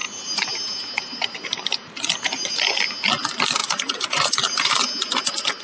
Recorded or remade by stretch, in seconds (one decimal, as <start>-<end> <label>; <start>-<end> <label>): 0.0-2.6 remade; 2.6-3.6 recorded; 3.6-4.7 remade; 4.7-5.6 recorded